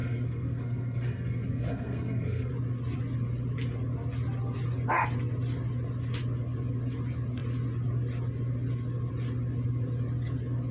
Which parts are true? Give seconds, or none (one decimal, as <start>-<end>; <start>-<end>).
2.5-10.7